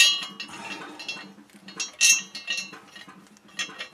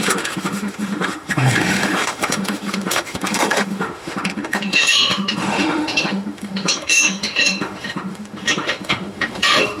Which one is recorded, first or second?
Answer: first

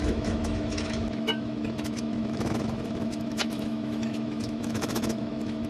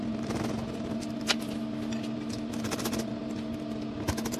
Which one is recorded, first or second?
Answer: second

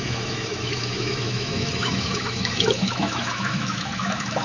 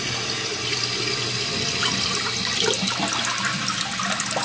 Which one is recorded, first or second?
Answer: second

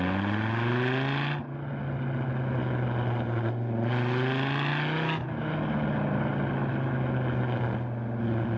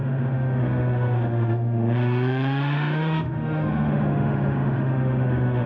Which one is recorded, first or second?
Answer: first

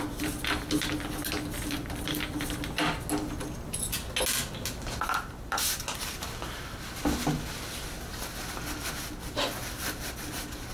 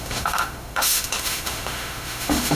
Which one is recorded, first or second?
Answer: first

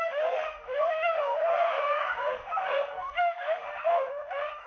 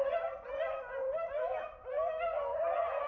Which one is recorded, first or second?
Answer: second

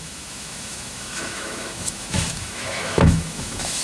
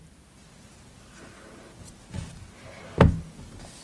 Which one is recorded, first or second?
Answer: second